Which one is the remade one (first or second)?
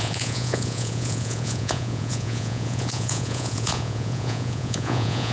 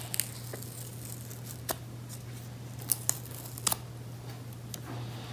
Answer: first